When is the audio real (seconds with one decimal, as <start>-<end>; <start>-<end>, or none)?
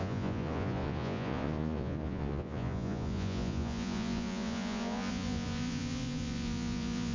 none